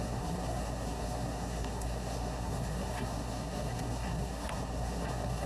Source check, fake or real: fake